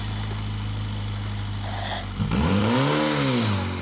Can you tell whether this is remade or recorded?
recorded